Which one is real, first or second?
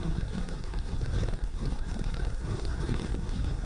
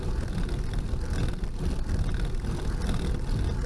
second